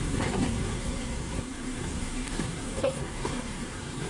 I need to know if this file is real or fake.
fake